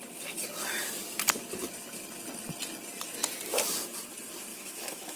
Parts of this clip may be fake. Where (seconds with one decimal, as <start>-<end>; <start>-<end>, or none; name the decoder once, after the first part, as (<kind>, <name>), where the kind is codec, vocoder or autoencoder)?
4.5-5.2 (autoencoder, DAC-VAE)